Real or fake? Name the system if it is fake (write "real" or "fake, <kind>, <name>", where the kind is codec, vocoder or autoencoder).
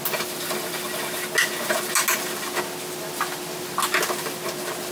real